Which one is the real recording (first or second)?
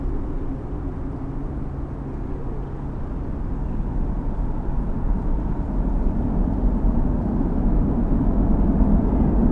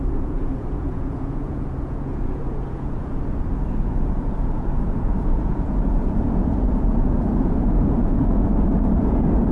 first